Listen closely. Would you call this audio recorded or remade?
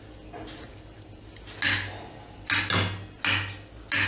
recorded